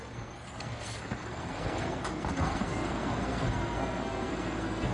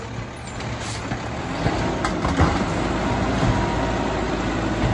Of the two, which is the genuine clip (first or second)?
second